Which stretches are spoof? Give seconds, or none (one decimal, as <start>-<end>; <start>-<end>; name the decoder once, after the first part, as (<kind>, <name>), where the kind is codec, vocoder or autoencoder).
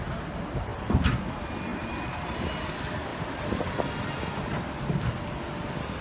1.7-2.5 (vocoder, BigVGAN v2)